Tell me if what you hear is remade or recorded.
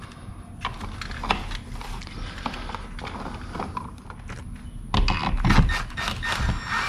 recorded